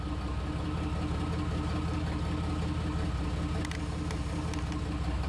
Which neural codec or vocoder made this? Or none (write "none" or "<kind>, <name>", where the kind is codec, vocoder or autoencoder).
none